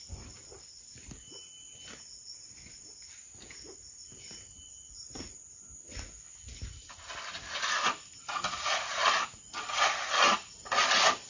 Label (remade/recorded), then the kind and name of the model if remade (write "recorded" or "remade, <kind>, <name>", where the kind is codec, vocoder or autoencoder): recorded